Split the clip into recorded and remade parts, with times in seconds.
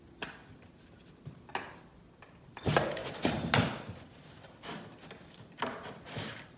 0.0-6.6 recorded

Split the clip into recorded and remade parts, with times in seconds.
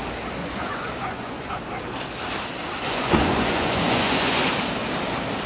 0.0-0.4 recorded; 0.4-1.6 remade; 1.6-2.8 recorded; 2.8-4.4 remade; 4.4-5.5 recorded